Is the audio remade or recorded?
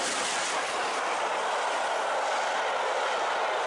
recorded